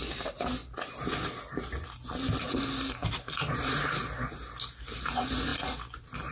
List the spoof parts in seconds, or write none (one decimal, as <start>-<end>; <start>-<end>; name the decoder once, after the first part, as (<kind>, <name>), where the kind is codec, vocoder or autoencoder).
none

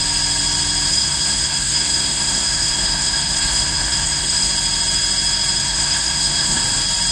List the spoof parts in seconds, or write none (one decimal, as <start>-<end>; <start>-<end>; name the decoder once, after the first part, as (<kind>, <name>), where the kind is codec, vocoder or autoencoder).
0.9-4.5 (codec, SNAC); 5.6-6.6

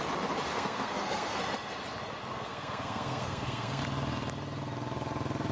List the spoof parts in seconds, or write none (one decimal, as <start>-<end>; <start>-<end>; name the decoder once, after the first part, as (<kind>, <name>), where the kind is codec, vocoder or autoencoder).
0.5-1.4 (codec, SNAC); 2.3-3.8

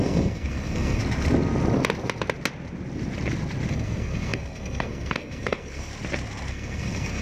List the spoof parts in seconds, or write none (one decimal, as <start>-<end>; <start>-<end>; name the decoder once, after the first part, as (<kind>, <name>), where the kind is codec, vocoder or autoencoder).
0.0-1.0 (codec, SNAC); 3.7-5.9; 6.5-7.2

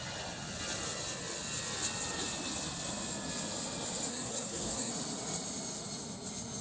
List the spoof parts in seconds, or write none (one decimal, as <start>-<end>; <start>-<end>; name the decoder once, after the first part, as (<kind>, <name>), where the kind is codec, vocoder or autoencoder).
4.1-4.9 (codec, SNAC)

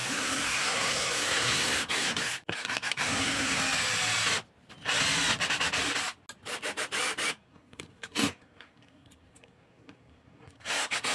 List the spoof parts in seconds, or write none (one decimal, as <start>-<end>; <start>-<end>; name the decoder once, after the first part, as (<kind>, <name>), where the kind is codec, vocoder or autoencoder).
0.0-3.6 (codec, SNAC); 7.3-11.1